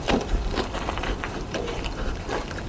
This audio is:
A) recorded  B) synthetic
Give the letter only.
B